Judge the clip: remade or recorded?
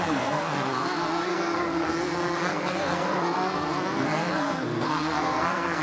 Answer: remade